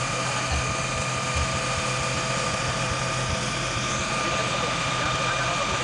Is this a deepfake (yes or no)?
no